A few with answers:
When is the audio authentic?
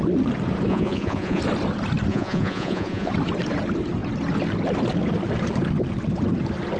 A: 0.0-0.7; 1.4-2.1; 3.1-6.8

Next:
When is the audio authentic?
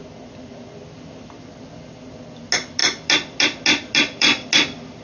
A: 0.0-5.0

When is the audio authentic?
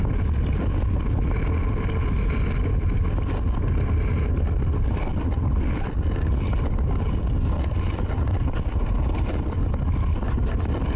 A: 0.0-11.0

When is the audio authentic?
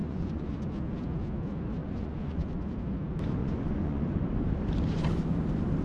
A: 0.6-1.8; 2.6-3.4; 4.2-5.8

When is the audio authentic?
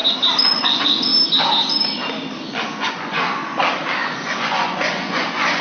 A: 0.0-0.6; 1.1-2.6; 3.4-4.0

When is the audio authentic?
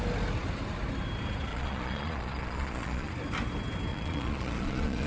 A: 0.0-1.5; 3.1-3.9